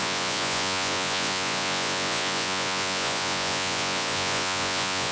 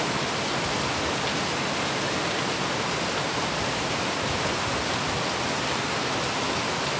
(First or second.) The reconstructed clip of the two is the first